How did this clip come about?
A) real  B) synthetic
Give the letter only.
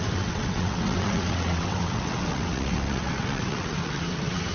B